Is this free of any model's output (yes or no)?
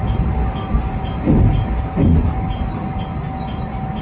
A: yes